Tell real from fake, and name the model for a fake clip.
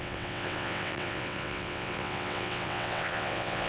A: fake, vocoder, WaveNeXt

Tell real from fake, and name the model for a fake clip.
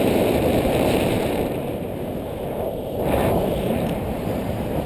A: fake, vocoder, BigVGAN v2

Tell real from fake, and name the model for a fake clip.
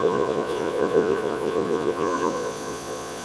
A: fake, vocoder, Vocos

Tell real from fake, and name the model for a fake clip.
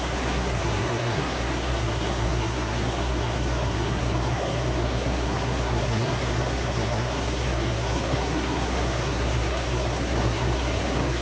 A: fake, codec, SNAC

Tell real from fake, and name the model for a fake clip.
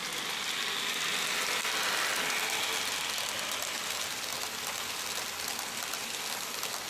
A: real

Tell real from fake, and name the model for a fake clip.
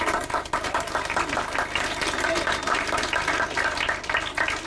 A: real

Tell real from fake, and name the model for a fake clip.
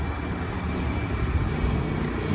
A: real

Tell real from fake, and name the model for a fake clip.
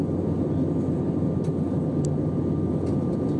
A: real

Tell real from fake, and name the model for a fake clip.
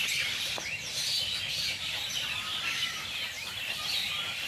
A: real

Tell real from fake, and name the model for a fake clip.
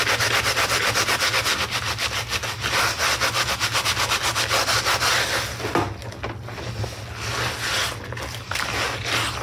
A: real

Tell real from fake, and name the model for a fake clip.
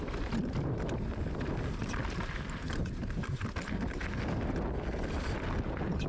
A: real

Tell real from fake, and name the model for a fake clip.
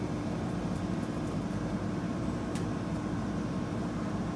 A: fake, vocoder, BigVGAN v2